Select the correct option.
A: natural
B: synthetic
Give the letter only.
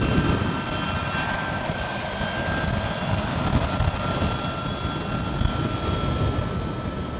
A